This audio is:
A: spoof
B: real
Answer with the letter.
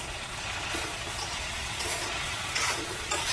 A